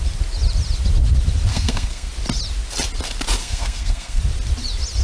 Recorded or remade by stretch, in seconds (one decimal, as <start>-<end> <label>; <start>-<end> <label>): 0.0-1.5 recorded; 1.5-2.1 remade; 2.1-3.4 recorded; 3.4-4.2 remade; 4.2-5.0 recorded